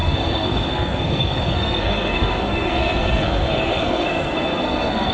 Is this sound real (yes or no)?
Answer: no